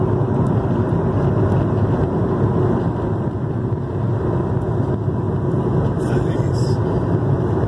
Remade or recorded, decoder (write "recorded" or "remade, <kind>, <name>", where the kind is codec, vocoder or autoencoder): recorded